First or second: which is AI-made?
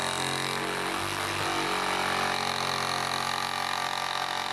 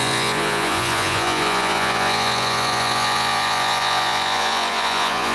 second